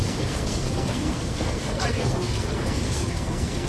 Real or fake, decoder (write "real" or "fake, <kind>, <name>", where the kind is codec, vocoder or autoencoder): fake, codec, SNAC